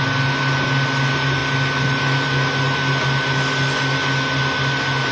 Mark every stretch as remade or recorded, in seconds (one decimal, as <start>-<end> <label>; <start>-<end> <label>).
0.0-5.1 recorded